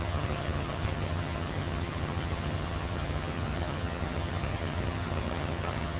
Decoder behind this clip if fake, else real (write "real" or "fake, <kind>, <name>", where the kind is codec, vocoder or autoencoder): fake, vocoder, HiFi-GAN